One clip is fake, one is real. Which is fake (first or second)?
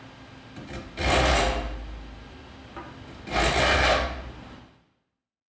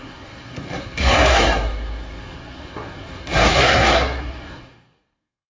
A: second